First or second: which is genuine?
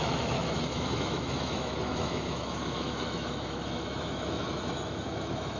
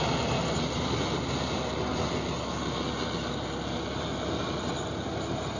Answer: second